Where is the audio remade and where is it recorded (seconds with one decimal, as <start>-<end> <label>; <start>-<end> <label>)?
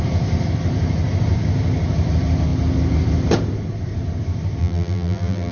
0.0-4.6 recorded; 4.6-5.5 remade